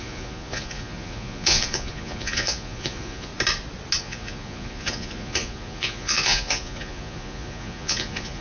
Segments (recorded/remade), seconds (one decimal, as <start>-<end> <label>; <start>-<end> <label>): 0.0-3.3 remade; 3.3-4.0 recorded; 4.0-8.4 remade